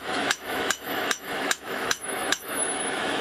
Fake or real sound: fake